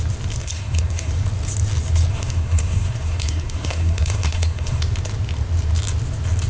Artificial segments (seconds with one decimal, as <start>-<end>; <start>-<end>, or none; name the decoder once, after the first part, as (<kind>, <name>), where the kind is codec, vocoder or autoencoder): 0.4-1.1 (codec, SNAC); 2.1-4.8